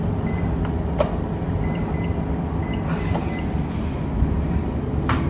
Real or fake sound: real